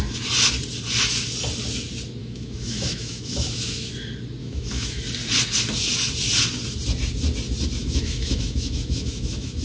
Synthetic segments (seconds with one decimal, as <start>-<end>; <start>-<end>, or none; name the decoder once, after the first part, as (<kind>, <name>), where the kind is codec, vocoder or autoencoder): 2.2-3.9 (autoencoder, DAC-VAE); 4.4-5.0; 7.8-9.6

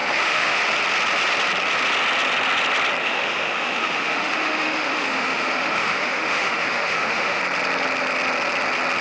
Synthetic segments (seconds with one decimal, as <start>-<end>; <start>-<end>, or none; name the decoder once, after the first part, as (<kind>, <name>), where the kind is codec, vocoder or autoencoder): 0.0-0.6 (autoencoder, DAC-VAE); 3.0-7.4

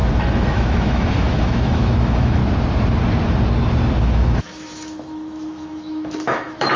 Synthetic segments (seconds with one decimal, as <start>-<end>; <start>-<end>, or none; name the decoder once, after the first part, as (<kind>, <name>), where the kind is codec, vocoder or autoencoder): 0.0-2.4 (autoencoder, DAC-VAE); 4.0-6.8

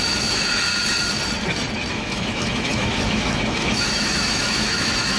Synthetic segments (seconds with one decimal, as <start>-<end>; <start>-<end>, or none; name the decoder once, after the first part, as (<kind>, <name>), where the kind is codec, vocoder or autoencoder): 0.0-0.7 (autoencoder, DAC-VAE); 1.9-5.2

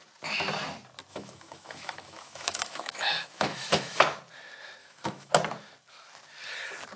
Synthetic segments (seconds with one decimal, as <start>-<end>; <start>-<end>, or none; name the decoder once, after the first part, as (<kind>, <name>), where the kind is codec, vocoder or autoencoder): 1.1-4.0 (autoencoder, DAC-VAE); 4.8-5.3

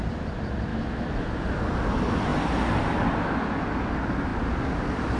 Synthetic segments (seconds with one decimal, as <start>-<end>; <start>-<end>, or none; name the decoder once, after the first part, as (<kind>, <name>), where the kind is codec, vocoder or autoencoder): 0.7-1.3 (autoencoder, DAC-VAE)